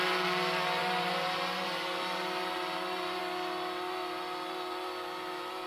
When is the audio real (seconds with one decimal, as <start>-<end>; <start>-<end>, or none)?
0.0-0.8; 3.2-5.7